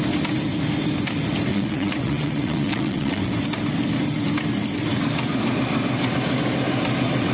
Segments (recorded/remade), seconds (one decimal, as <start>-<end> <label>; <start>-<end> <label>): 0.0-1.5 recorded; 1.5-3.3 remade; 3.3-7.3 recorded